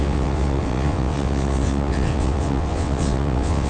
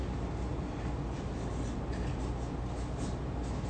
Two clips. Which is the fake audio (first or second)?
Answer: first